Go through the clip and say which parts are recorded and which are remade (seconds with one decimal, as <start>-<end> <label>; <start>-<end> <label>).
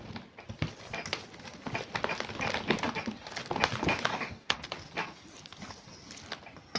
0.0-4.1 recorded; 4.1-4.6 remade; 4.6-6.8 recorded